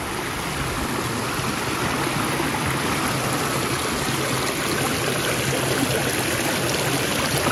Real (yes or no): yes